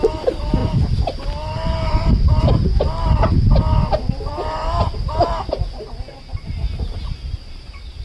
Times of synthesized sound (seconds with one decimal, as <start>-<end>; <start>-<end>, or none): none